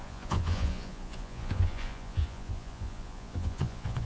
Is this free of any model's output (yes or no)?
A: no